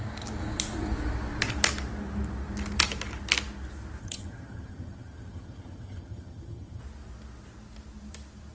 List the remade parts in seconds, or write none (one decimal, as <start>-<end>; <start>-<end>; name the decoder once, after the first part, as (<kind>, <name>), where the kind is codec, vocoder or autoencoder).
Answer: 4.0-6.8 (vocoder, HiFi-GAN)